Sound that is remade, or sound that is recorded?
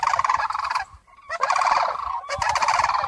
remade